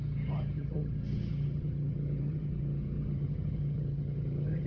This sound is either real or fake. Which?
fake